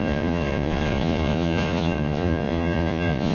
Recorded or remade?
remade